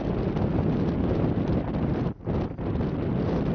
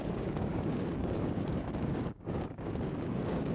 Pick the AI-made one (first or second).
second